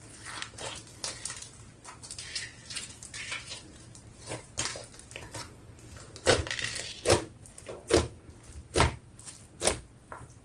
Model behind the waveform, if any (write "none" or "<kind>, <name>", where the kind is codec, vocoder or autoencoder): none